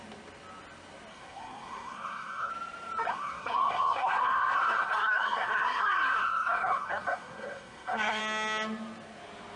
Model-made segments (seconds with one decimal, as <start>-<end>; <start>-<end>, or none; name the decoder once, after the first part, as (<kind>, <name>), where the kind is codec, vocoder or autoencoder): 1.1-2.5 (codec, SNAC); 3.1-8.2

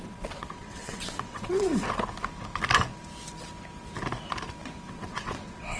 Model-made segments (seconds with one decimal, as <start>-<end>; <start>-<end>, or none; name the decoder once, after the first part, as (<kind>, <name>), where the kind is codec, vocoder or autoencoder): 0.0-1.7 (vocoder, WaveNeXt); 4.9-5.8

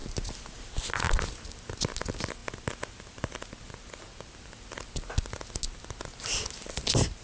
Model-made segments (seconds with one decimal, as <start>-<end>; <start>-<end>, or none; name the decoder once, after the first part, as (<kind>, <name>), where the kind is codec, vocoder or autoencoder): none

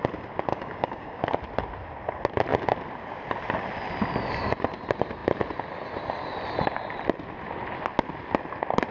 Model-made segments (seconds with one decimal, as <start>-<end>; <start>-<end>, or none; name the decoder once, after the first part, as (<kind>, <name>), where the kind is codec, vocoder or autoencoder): 0.5-1.2 (codec, DAC)

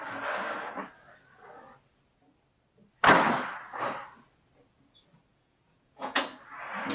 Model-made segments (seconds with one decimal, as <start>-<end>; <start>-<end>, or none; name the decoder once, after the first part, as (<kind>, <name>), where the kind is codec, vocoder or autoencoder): 5.3-6.2 (vocoder, Vocos)